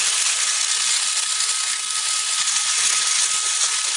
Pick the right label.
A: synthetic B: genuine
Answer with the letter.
B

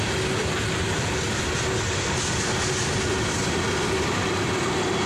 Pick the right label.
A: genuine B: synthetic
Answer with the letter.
A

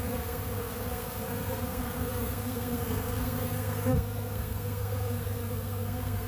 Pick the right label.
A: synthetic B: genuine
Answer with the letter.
A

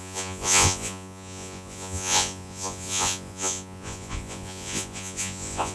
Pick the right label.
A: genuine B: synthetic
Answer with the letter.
B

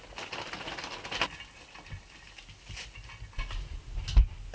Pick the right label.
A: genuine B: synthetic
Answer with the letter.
A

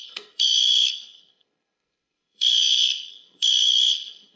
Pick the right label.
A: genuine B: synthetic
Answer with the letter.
B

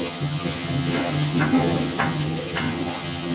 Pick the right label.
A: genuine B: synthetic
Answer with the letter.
B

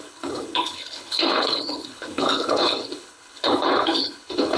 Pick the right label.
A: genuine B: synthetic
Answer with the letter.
B